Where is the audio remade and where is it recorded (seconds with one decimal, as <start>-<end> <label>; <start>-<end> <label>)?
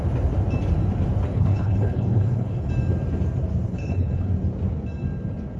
0.0-1.3 recorded; 1.3-2.7 remade; 2.7-3.7 recorded; 3.7-4.3 remade; 4.3-5.6 recorded